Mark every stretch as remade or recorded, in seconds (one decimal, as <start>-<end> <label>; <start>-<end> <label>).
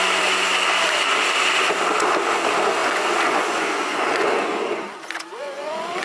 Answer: 0.0-2.8 recorded; 2.8-6.0 remade